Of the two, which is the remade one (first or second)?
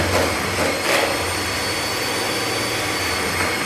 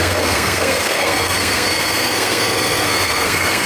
second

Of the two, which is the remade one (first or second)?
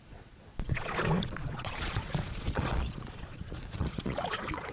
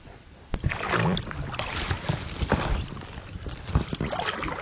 first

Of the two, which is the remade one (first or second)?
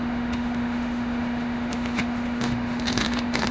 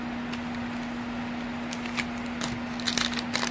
first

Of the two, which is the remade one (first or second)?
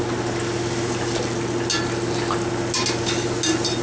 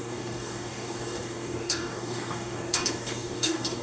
second